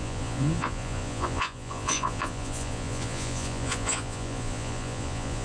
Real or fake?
fake